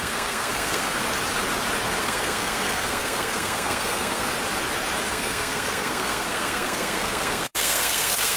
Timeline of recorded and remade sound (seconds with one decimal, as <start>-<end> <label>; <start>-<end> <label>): 0.0-1.0 remade; 1.0-2.0 recorded; 2.0-4.3 remade; 4.3-5.1 recorded; 5.1-8.4 remade

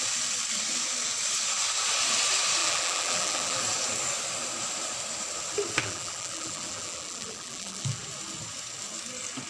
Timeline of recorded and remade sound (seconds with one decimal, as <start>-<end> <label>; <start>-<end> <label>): 0.0-2.6 recorded; 2.6-3.6 remade; 3.6-5.8 recorded; 5.8-8.0 remade; 8.0-9.5 recorded

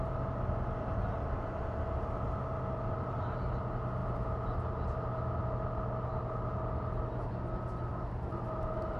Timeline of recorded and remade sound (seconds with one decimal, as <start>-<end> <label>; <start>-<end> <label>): 0.0-9.0 recorded

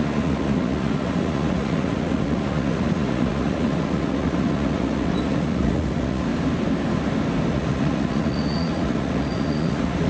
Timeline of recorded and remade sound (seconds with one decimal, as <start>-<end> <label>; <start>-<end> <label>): 0.0-6.3 remade; 6.3-7.5 recorded; 7.5-10.1 remade

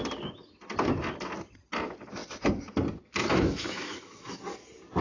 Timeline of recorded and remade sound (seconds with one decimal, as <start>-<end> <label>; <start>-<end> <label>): 0.0-3.3 recorded; 3.3-4.4 remade; 4.4-5.0 recorded